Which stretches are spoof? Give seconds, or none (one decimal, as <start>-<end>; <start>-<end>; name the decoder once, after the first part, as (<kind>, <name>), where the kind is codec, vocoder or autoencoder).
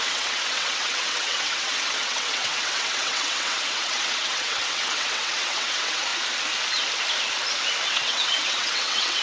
0.0-6.1 (vocoder, WaveNeXt); 7.9-9.2